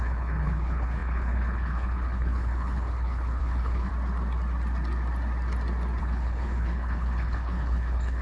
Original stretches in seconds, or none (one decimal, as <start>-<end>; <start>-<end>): 3.9-6.0